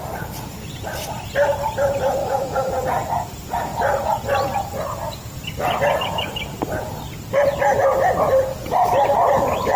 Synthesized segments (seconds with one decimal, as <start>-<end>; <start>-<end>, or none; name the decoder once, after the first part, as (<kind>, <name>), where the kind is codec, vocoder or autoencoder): 2.2-2.7 (autoencoder, DAC-VAE)